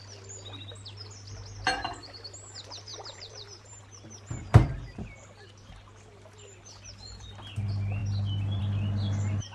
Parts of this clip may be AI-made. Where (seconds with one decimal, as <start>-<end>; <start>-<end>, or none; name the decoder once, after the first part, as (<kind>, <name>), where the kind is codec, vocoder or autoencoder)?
2.9-3.8 (vocoder, BigVGAN v2)